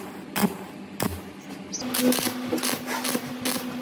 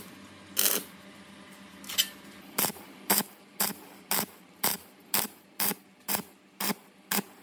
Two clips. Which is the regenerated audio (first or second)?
second